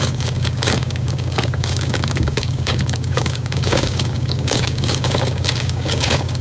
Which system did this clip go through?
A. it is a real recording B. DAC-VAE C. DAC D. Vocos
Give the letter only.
C